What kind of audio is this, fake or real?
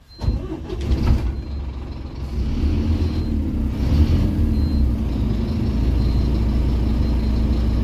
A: real